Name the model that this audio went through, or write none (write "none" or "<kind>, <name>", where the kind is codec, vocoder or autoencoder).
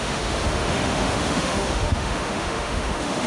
autoencoder, DAC-VAE